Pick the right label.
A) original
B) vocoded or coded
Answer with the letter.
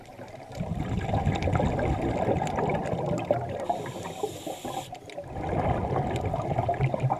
A